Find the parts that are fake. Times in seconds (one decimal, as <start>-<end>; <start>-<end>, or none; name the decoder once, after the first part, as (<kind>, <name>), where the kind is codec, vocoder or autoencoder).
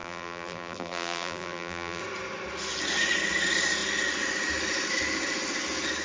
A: 0.0-2.0 (vocoder, BigVGAN v2)